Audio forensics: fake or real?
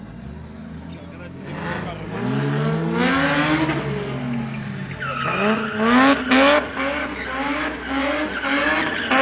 real